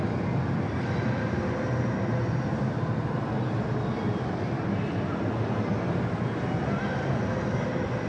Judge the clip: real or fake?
real